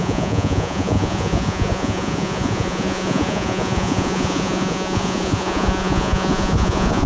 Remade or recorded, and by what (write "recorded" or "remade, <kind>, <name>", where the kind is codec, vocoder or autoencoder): remade, vocoder, Vocos